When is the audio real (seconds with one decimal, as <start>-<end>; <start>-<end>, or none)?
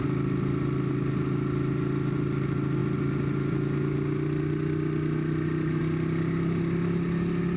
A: 0.0-7.6